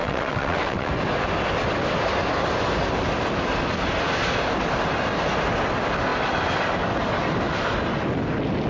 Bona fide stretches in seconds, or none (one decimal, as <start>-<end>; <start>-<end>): 0.9-8.7